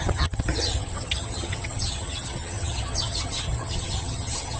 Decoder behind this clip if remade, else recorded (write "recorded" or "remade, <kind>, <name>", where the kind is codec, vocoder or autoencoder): remade, vocoder, HiFi-GAN